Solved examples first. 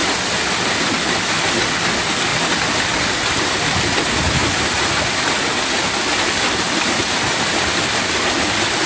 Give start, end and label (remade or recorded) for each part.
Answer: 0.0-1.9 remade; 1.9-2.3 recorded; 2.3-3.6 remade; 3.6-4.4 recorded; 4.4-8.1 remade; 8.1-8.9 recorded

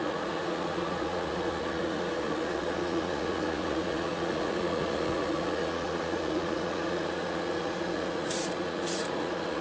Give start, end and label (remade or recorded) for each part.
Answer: 0.0-9.6 remade

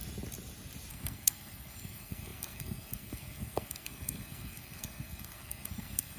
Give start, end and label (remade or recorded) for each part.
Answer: 0.0-0.9 recorded; 0.9-6.2 remade

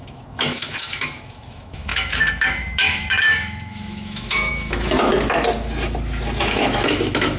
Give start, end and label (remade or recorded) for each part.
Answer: 0.0-5.1 remade; 5.1-6.4 recorded; 6.4-7.4 remade